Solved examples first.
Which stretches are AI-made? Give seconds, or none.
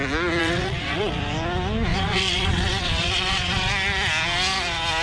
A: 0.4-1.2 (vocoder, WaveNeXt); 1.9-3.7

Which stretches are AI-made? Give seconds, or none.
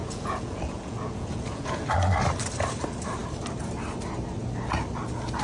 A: 0.0-1.8 (vocoder, Vocos)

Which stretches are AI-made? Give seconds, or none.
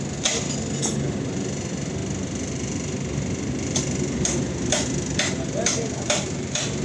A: none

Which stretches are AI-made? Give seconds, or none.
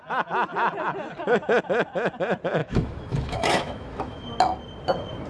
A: 2.6-4.3 (autoencoder, DAC-VAE)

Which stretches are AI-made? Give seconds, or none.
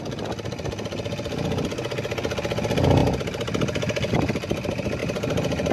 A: 5.0-5.7 (vocoder, BigVGAN v2)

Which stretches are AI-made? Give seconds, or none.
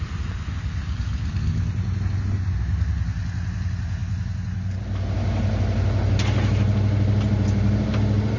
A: none